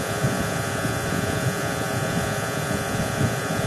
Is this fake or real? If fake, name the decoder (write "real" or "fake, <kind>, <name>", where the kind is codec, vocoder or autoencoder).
fake, vocoder, Vocos